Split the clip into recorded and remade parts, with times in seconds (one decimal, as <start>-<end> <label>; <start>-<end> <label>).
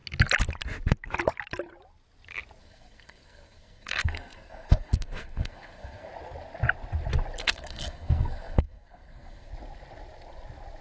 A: 0.0-2.6 recorded; 2.6-6.1 remade; 6.1-7.4 recorded; 7.4-9.5 remade; 9.5-10.8 recorded